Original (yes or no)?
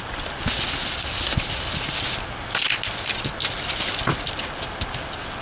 yes